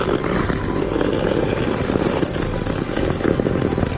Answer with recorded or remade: recorded